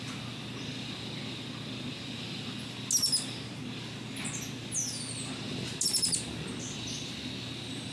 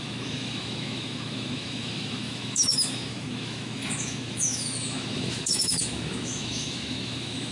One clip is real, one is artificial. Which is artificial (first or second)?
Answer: second